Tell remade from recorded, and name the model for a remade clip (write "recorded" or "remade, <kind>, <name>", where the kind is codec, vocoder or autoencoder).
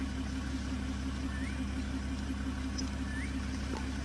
recorded